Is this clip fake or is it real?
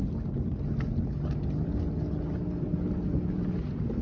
real